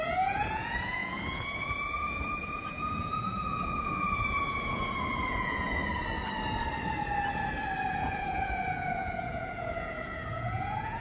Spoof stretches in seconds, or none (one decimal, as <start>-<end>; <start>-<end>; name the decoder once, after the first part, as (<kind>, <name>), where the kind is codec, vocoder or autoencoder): 0.0-5.8 (vocoder, Vocos); 7.9-11.0